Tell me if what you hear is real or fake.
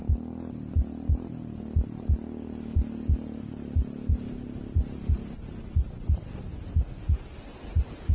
real